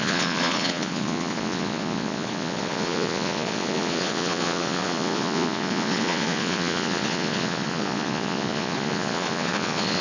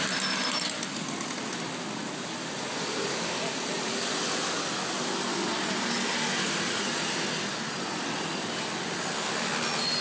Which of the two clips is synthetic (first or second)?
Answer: first